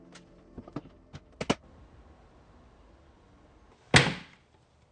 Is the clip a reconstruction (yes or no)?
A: no